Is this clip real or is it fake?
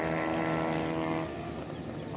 real